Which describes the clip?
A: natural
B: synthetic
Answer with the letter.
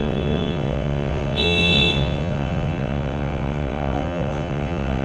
B